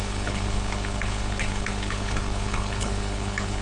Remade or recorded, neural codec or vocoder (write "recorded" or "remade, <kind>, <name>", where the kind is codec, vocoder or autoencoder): remade, codec, HILCodec